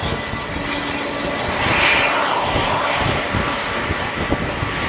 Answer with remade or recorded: recorded